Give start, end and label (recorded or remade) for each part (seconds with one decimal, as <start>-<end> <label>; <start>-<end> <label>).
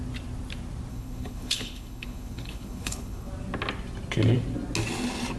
0.0-0.9 recorded; 0.9-3.3 remade; 3.3-5.4 recorded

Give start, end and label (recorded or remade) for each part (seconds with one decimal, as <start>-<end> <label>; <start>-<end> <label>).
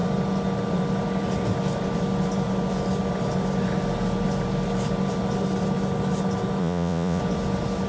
0.0-6.6 recorded; 6.6-7.2 remade; 7.2-7.9 recorded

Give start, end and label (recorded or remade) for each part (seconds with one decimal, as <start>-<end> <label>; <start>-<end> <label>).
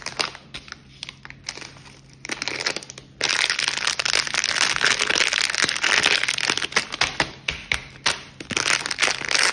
0.0-9.5 recorded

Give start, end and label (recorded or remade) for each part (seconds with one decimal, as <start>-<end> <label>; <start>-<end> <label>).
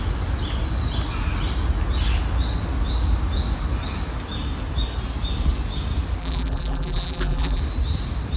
0.0-6.2 recorded; 6.2-7.6 remade; 7.6-8.4 recorded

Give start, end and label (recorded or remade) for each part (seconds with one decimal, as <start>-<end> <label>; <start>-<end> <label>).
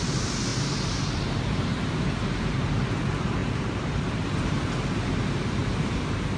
0.0-6.4 remade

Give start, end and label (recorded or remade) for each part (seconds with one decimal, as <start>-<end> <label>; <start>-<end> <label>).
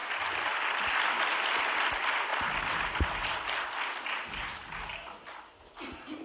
0.0-1.5 recorded; 1.5-2.3 remade; 2.3-6.2 recorded